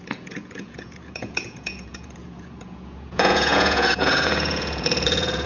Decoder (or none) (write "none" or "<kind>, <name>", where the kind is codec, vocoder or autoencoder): vocoder, Vocos